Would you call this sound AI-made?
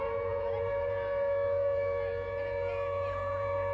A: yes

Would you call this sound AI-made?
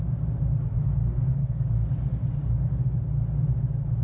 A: no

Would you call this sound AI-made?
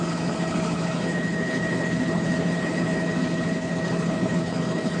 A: yes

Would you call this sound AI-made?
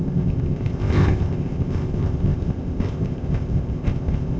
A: yes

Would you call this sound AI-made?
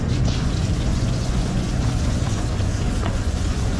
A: yes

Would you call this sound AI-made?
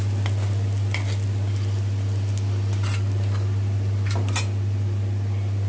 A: no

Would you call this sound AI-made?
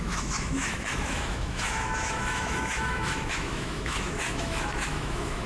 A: yes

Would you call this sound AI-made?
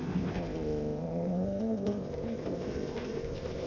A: yes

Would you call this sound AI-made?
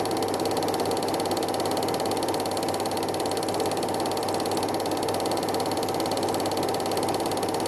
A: no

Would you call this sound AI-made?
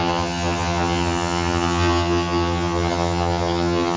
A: yes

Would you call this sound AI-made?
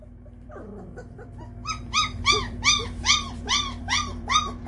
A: yes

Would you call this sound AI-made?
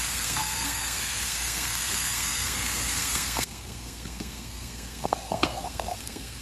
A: yes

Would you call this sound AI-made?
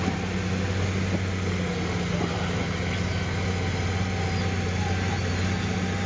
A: no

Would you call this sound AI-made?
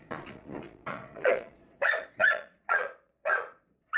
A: yes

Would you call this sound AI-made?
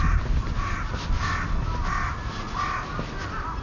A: no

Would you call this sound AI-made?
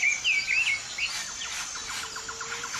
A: no